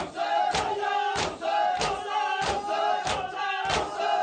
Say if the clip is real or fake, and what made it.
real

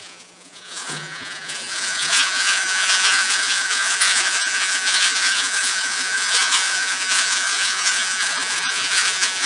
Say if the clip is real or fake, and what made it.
fake, vocoder, Vocos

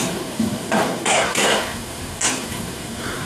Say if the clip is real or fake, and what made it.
fake, codec, SNAC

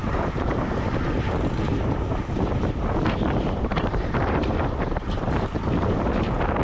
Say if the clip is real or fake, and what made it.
fake, vocoder, BigVGAN v2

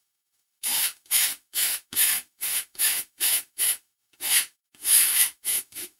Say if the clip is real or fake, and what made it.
fake, autoencoder, DAC-VAE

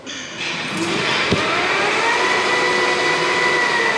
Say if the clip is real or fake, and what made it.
real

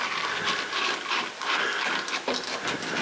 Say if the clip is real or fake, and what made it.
real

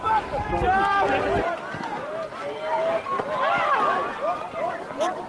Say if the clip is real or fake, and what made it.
real